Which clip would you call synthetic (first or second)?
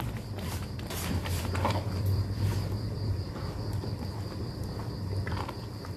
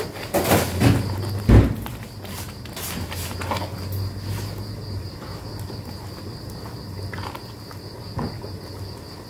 first